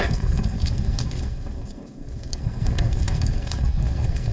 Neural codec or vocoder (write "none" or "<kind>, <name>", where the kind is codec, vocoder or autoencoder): codec, SNAC